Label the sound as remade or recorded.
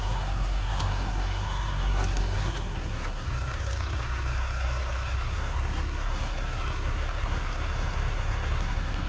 remade